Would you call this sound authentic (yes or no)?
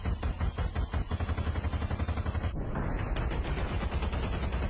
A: yes